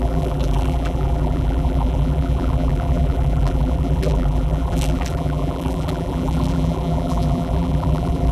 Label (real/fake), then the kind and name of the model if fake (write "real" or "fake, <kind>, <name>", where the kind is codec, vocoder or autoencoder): fake, vocoder, BigVGAN v2